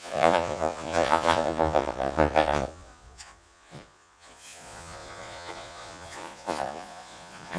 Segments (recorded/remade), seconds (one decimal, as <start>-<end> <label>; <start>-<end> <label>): 0.0-7.6 remade